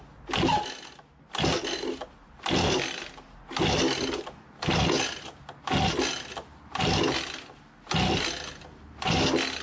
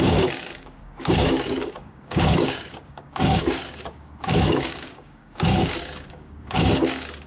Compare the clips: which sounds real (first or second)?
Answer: first